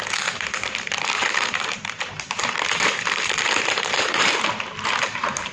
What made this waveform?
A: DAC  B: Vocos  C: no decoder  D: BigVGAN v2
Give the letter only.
D